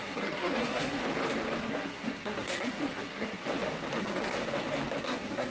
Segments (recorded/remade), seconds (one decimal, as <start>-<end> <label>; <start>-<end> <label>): 0.0-1.0 remade; 1.0-1.6 recorded; 1.6-3.4 remade; 3.4-4.0 recorded; 4.0-4.4 remade; 4.4-5.0 recorded; 5.0-5.5 remade